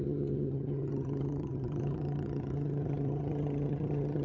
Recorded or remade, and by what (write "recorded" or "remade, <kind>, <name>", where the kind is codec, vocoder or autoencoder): remade, vocoder, HiFi-GAN